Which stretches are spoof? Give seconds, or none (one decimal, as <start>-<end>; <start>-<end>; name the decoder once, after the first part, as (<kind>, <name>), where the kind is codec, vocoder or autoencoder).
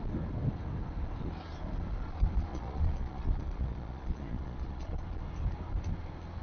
2.5-5.0 (vocoder, Vocos)